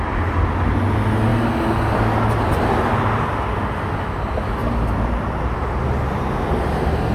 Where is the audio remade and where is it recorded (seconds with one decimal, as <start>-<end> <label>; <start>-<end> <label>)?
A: 0.0-7.1 recorded